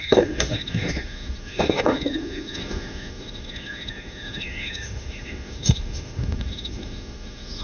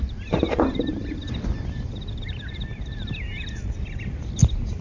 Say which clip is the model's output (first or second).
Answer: first